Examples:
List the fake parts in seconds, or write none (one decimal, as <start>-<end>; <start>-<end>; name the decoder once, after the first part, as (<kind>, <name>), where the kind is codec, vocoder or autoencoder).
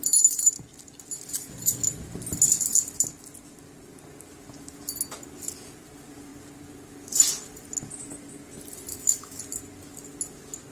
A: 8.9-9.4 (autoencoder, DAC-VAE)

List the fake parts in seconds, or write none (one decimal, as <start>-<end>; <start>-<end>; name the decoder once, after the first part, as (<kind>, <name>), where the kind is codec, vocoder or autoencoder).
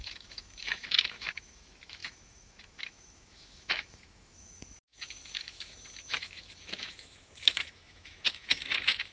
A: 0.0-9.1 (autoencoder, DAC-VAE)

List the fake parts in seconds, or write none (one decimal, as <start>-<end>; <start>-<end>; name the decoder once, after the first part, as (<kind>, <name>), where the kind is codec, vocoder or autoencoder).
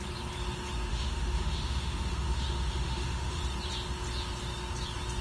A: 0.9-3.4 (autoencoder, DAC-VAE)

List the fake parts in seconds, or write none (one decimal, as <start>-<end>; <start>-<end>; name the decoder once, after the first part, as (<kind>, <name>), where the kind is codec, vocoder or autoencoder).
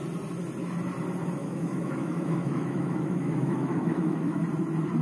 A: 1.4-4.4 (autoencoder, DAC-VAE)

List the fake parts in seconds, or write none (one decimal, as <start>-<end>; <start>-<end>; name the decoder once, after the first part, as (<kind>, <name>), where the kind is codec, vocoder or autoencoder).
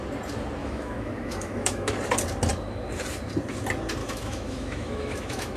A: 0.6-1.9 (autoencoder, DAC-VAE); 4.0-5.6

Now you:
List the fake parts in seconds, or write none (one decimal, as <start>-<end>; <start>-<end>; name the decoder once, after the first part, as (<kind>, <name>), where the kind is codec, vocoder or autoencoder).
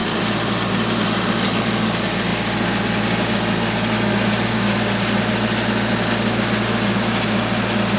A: none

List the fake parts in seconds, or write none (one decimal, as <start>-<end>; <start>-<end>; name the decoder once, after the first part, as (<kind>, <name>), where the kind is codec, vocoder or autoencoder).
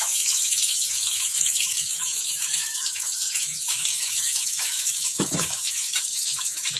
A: 0.0-6.8 (autoencoder, DAC-VAE)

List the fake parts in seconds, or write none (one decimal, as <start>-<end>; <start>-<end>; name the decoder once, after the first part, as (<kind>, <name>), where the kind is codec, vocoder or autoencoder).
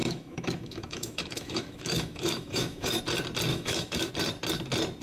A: 0.0-3.0 (autoencoder, DAC-VAE); 3.5-4.1